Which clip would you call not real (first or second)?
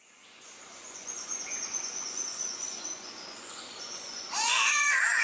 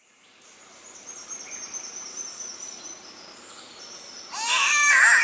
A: first